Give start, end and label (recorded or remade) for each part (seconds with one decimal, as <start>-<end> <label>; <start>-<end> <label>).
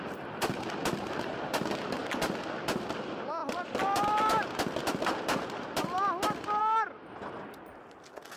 0.0-8.4 recorded